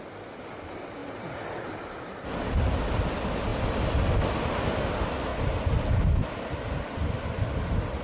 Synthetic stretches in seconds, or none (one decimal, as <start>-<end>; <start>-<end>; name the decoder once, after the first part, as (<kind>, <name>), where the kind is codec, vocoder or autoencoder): none

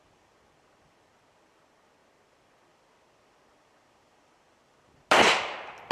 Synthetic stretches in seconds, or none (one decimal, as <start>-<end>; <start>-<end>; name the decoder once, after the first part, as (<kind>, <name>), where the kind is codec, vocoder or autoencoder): none

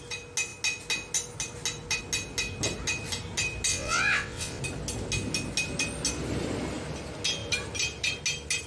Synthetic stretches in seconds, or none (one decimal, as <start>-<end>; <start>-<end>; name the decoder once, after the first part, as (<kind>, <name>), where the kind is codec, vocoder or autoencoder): 3.7-4.6 (vocoder, WaveNeXt)